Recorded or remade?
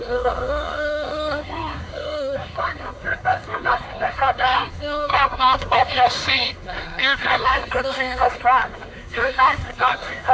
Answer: remade